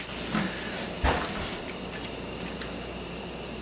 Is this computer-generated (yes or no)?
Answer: no